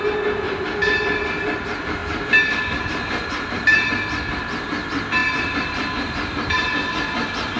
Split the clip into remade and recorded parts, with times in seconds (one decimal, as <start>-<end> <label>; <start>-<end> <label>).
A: 0.0-2.0 recorded; 2.0-3.9 remade; 3.9-5.2 recorded; 5.2-6.6 remade; 6.6-7.6 recorded